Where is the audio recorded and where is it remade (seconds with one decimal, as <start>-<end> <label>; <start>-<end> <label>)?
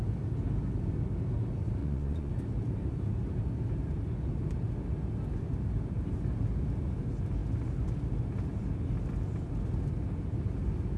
0.0-1.8 recorded; 1.8-2.3 remade; 2.3-11.0 recorded